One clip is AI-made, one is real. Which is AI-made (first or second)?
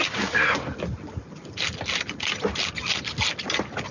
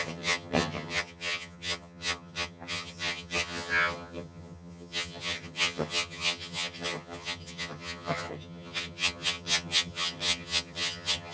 second